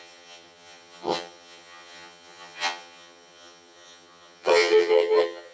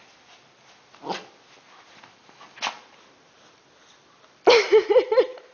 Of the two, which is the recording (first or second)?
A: second